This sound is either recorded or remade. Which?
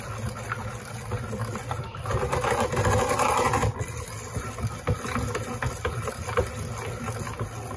recorded